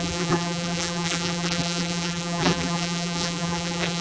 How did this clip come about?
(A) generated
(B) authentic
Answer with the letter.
A